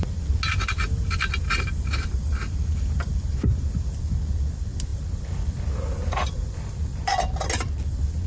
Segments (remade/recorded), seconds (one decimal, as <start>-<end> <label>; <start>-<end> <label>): 0.0-8.3 recorded